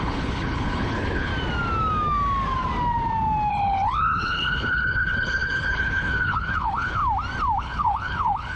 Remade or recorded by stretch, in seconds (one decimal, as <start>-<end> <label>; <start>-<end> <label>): 0.0-1.3 remade; 1.3-3.5 recorded; 3.5-7.0 remade; 7.0-7.6 recorded; 7.6-8.6 remade